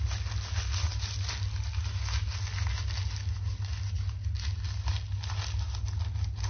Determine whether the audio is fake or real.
real